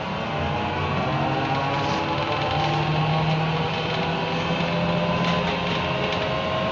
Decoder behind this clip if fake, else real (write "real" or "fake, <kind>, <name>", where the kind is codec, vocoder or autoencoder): real